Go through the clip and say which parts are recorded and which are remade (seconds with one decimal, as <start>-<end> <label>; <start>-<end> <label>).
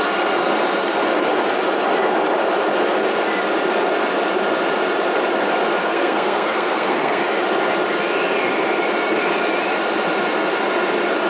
0.0-5.8 recorded; 5.8-7.2 remade; 7.2-11.3 recorded